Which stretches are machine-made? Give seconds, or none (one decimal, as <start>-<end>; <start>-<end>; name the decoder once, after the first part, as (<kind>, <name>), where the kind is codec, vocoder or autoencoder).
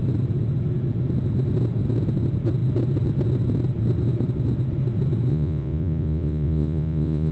5.3-7.3 (vocoder, Vocos)